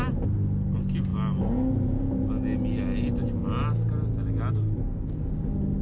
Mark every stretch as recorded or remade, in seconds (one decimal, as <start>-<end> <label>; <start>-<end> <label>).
0.0-4.8 recorded; 4.8-5.3 remade; 5.3-5.8 recorded